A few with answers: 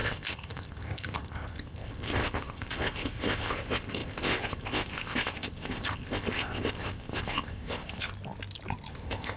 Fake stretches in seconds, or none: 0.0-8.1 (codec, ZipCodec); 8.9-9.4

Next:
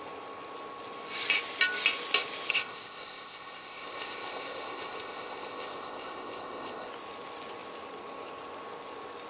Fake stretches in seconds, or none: 2.5-6.9 (codec, ZipCodec)

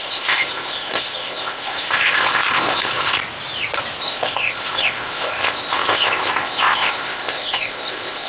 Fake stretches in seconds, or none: 0.0-3.2 (codec, ZipCodec); 4.0-8.3

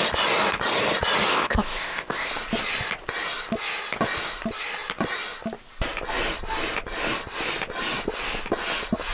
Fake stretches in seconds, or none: 1.3-2.3 (codec, ZipCodec)